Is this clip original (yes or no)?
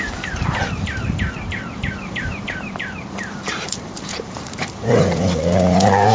no